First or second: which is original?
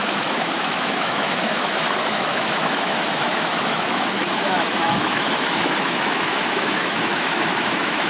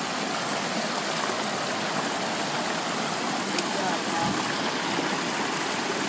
second